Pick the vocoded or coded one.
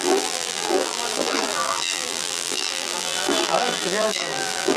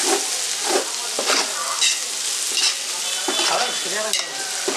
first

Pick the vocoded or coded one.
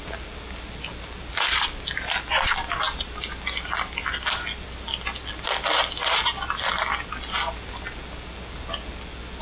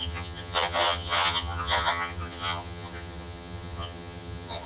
second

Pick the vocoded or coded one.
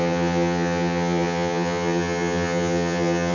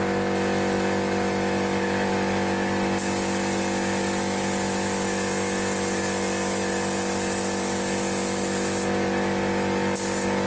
first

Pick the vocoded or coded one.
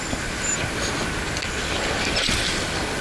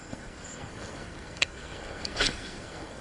second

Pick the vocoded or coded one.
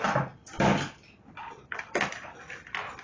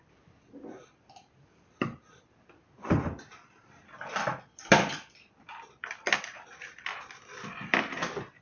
second